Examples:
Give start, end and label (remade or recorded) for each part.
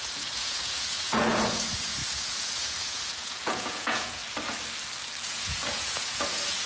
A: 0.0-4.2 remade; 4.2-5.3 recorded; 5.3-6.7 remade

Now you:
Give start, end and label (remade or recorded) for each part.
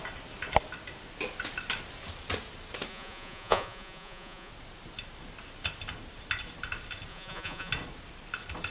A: 0.0-2.9 recorded; 2.9-4.5 remade; 4.5-7.1 recorded; 7.1-7.7 remade; 7.7-8.7 recorded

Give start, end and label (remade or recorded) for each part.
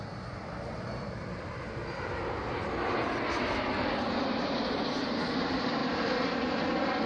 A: 0.0-7.1 recorded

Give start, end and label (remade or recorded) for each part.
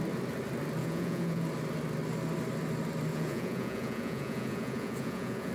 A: 0.0-0.8 recorded; 0.8-1.4 remade; 1.4-3.1 recorded; 3.1-5.5 remade